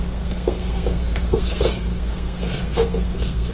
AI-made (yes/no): yes